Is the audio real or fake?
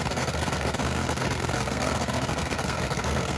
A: fake